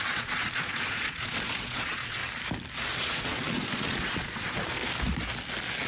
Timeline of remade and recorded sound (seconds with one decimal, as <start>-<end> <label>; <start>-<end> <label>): 0.0-2.2 remade; 2.2-3.0 recorded; 3.0-4.8 remade; 4.8-5.9 recorded